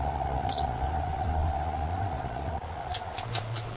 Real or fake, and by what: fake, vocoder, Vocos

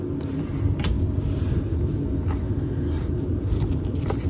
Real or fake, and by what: real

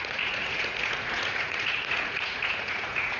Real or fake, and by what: fake, vocoder, Vocos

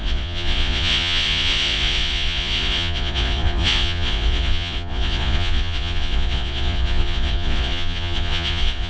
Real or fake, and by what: fake, vocoder, Vocos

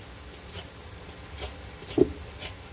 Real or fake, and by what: real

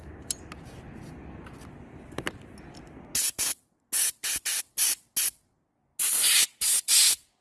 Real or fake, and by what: real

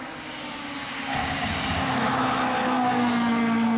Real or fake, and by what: real